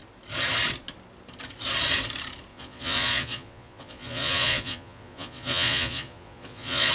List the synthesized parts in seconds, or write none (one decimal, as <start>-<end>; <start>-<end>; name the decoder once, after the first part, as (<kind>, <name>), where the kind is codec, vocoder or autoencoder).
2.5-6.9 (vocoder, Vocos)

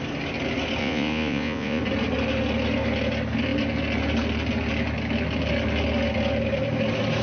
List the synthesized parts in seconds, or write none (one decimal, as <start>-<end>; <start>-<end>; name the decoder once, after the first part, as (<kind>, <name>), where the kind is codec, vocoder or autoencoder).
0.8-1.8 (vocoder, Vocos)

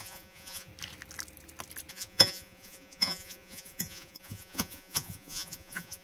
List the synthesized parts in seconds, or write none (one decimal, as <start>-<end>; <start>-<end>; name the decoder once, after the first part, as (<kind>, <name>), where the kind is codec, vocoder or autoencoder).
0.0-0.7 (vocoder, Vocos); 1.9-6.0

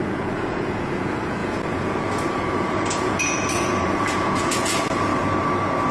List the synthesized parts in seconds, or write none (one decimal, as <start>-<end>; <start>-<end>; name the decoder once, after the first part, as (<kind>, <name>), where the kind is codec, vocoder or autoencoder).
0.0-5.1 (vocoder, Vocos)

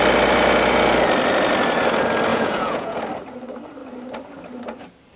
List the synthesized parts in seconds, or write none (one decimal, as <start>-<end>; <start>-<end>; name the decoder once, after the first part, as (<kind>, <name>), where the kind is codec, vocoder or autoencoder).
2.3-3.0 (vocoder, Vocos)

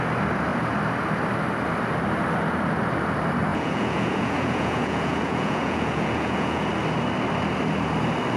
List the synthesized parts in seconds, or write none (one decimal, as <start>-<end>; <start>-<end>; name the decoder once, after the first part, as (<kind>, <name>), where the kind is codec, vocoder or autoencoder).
3.5-6.7 (vocoder, Vocos)

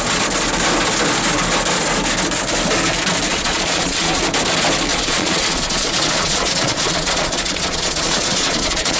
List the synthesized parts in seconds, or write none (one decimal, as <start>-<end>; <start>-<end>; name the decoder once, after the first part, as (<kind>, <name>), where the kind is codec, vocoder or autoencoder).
3.3-4.2 (vocoder, Vocos); 4.9-9.0